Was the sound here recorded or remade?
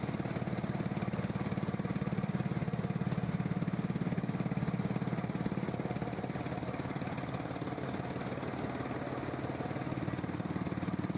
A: recorded